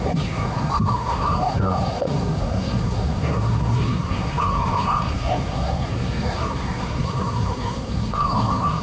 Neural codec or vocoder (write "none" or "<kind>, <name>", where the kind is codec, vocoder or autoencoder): codec, SNAC